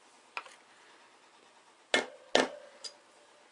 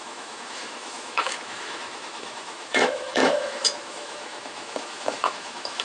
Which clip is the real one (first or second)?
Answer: first